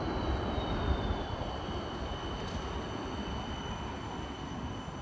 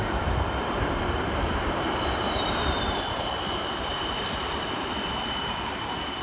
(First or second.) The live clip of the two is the first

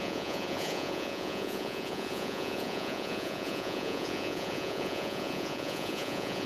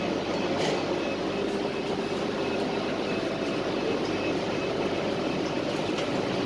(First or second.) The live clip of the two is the second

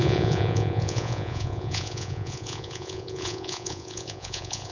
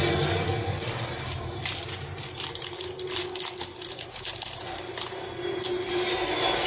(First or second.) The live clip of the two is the second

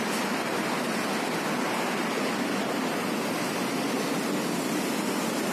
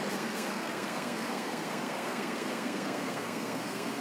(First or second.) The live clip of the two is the first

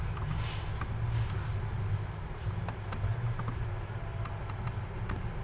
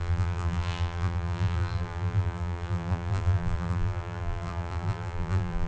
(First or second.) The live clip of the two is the first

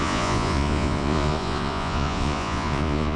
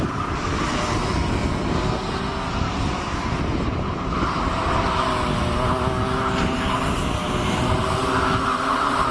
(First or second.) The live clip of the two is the second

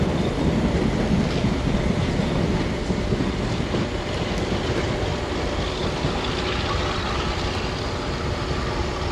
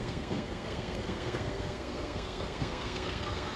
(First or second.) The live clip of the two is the first